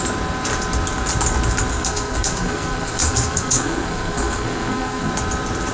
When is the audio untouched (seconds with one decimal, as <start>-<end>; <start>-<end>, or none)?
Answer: 0.0-1.7; 5.1-5.7